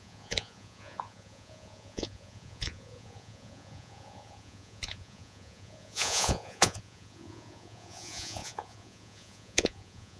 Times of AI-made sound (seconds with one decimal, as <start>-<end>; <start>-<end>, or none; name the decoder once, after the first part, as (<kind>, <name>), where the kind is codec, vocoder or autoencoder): 0.0-10.2 (vocoder, Vocos)